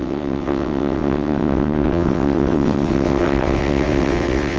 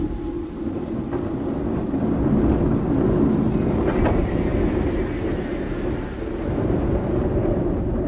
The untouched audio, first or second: second